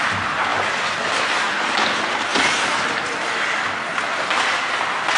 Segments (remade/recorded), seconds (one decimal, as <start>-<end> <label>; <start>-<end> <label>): 0.0-0.5 recorded; 0.5-1.4 remade; 1.4-5.2 recorded